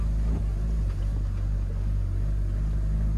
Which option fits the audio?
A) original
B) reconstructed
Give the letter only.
A